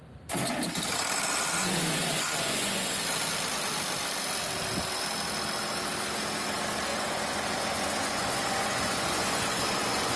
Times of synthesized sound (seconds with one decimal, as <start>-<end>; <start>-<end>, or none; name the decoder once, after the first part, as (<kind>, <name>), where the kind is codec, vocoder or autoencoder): 1.6-3.0 (vocoder, Vocos); 6.9-10.2